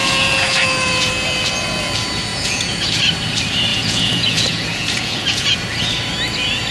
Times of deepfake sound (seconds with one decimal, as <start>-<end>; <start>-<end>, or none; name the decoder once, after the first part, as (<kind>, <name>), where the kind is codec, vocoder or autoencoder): 0.0-1.1 (vocoder, Vocos); 2.3-3.0; 3.7-5.5